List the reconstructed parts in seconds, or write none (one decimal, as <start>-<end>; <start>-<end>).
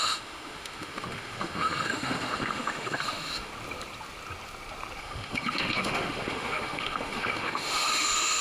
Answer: 0.0-3.5; 5.0-8.4